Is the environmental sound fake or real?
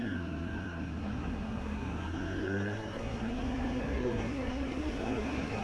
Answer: fake